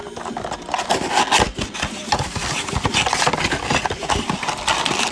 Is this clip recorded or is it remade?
recorded